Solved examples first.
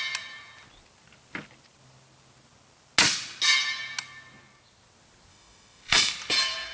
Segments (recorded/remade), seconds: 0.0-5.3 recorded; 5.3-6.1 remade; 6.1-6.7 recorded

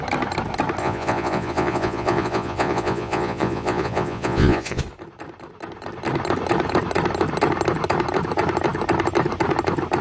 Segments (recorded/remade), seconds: 0.0-0.8 recorded; 0.8-4.8 remade; 4.8-10.0 recorded

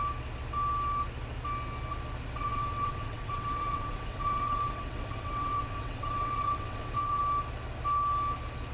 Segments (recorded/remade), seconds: 0.0-2.4 recorded; 2.4-7.2 remade; 7.2-8.7 recorded

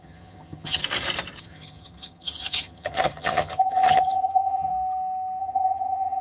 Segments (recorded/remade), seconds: 0.0-0.8 remade; 0.8-1.4 recorded; 1.4-4.7 remade; 4.7-5.4 recorded; 5.4-6.2 remade

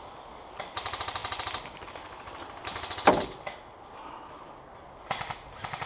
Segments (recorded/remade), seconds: 0.0-5.9 recorded